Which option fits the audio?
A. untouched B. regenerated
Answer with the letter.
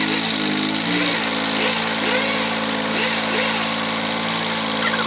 A